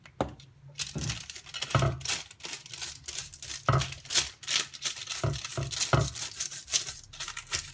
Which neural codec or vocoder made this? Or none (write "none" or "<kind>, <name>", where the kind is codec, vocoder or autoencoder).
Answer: none